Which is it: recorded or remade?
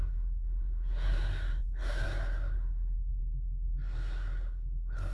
remade